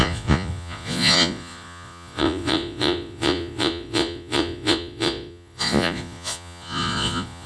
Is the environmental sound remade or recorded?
remade